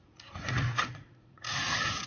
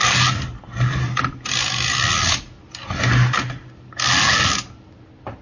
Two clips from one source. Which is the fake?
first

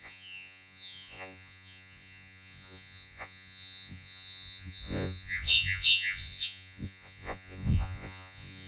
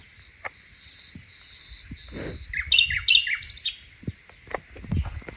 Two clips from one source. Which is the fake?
first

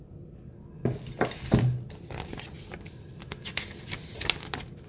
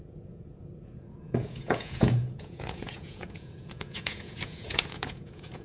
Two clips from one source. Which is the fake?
second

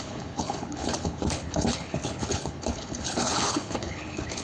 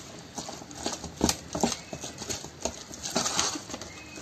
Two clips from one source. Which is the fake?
first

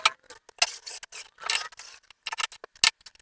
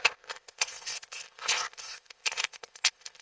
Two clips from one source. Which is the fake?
second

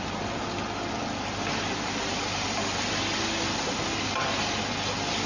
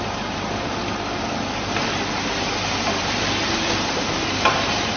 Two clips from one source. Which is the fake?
second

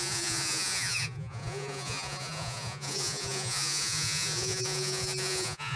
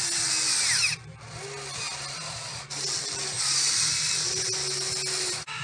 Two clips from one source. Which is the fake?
first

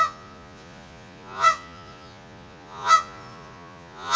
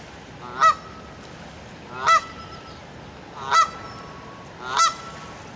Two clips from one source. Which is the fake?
first